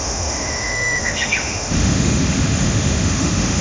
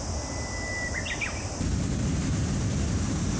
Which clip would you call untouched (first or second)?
second